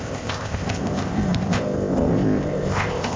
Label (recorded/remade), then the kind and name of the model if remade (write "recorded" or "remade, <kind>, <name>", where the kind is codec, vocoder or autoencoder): remade, codec, ZipCodec